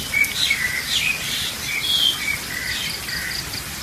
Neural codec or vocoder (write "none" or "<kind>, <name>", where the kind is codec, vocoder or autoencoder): none